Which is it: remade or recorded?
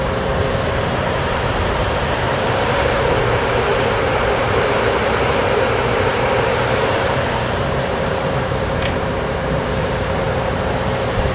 remade